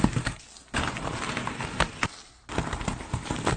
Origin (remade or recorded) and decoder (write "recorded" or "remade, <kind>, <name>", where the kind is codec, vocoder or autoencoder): recorded